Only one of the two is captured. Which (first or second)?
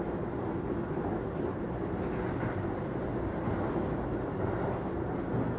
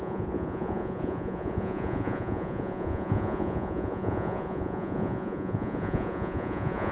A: first